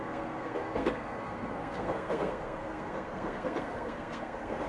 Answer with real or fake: fake